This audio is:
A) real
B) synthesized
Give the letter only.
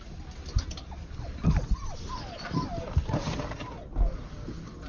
A